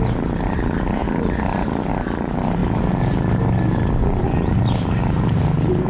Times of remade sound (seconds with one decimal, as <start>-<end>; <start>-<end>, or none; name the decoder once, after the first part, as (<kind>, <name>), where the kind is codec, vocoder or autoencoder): none